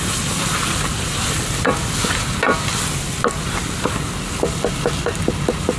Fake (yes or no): no